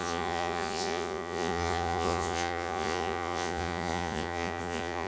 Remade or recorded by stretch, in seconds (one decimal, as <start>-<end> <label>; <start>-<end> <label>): 0.0-5.1 remade